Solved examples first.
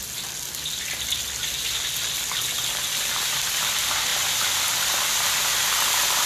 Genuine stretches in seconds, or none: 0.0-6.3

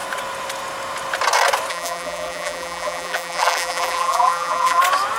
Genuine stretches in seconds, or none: 0.0-1.7; 4.8-5.2

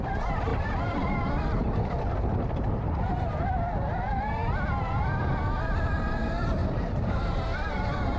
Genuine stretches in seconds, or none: 0.0-0.5; 1.0-6.6

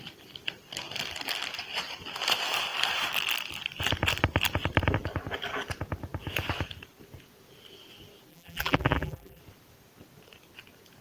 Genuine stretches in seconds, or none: 0.0-8.3; 9.4-11.0

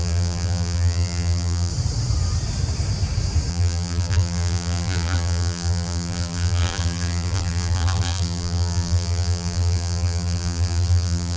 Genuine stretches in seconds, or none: 1.7-3.5

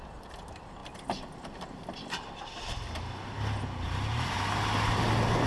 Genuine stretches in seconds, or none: 0.0-0.8; 2.4-5.5